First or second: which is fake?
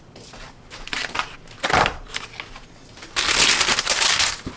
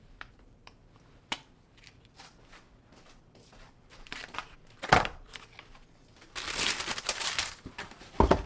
second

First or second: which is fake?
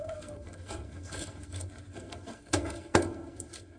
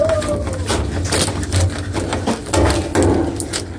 first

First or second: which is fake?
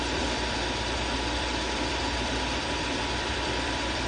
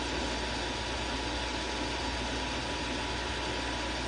first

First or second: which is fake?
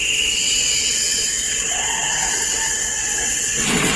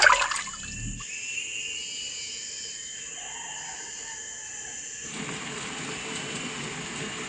first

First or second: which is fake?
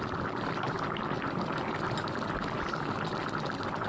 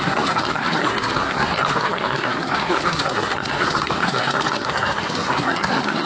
second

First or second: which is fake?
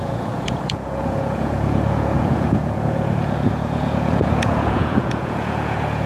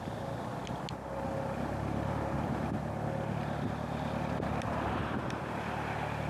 first